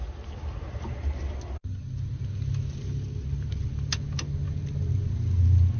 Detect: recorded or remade recorded